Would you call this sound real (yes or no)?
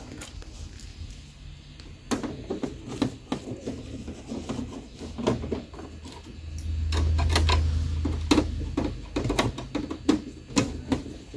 yes